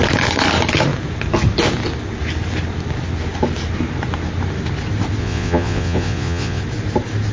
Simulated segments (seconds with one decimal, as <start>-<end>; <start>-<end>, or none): 5.2-6.6